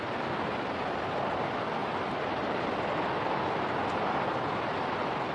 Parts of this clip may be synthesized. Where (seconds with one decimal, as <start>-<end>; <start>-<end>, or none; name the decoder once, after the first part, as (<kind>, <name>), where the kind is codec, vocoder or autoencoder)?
1.8-2.6 (vocoder, BigVGAN v2)